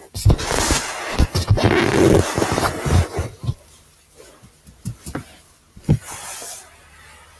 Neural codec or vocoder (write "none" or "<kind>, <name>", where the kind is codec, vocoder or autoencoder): none